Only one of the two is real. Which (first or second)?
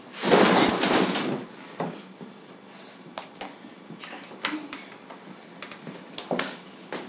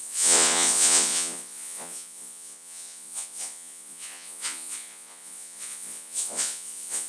first